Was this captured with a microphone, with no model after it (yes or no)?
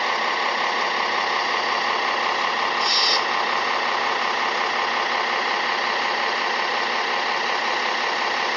yes